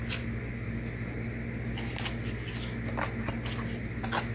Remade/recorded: recorded